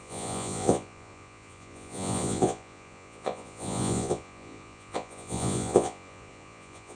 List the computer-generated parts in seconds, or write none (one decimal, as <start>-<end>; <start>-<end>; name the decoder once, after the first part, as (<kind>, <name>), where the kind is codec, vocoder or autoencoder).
0.0-6.9 (vocoder, Vocos)